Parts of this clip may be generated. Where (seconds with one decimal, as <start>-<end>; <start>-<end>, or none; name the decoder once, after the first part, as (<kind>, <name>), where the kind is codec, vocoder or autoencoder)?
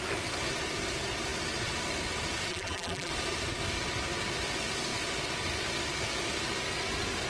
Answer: 2.5-3.1 (vocoder, BigVGAN v2)